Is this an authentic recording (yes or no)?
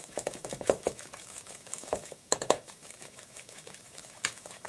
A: no